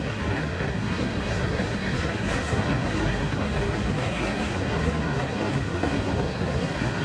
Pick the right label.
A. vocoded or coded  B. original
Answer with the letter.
A